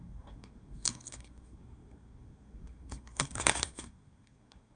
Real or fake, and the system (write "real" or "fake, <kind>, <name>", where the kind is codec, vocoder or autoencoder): fake, codec, SNAC